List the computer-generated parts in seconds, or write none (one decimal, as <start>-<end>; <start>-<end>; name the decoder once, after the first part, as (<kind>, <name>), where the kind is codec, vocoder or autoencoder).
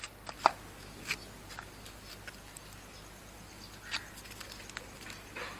none